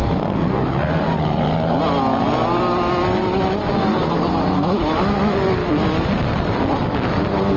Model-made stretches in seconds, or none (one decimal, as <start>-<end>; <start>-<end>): none